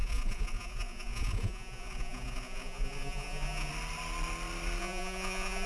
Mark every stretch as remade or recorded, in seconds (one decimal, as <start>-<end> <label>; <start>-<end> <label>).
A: 0.0-3.7 remade; 3.7-4.8 recorded; 4.8-5.7 remade